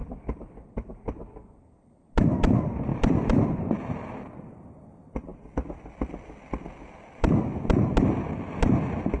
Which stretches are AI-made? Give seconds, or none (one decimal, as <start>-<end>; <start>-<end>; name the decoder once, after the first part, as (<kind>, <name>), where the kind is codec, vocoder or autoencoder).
0.0-0.7 (vocoder, BigVGAN v2); 2.9-4.2